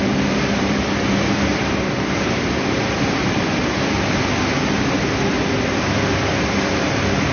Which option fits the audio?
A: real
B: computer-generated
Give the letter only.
B